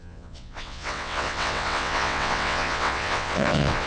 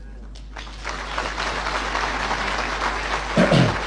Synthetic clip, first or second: first